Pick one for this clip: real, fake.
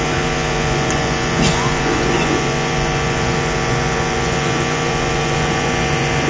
fake